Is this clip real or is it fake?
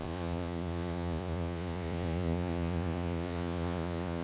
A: fake